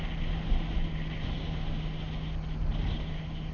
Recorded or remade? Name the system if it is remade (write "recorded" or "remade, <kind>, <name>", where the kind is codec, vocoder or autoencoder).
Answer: recorded